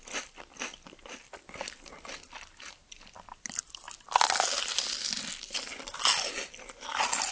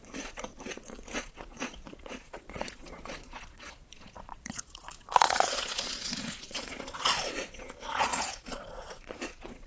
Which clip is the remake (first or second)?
second